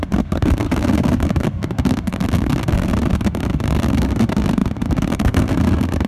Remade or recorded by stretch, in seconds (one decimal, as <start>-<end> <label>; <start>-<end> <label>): 0.0-6.1 remade